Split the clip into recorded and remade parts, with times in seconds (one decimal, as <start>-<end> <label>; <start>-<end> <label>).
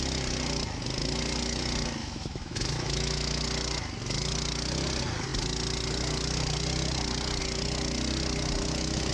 0.0-2.0 recorded; 2.0-3.4 remade; 3.4-9.1 recorded